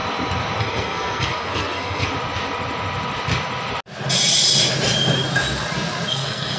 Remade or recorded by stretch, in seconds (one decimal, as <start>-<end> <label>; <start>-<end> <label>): 0.0-0.6 recorded; 0.6-2.1 remade; 2.1-6.1 recorded; 6.1-6.6 remade